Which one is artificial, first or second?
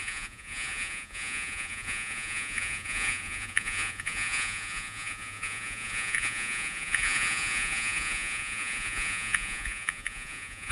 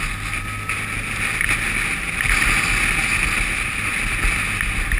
first